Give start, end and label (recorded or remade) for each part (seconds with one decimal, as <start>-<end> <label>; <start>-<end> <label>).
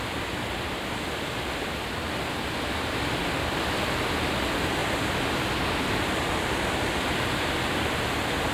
0.0-8.5 recorded